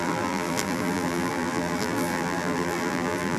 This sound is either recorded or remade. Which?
remade